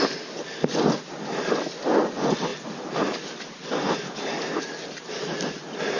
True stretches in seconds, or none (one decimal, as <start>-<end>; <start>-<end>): 0.0-6.0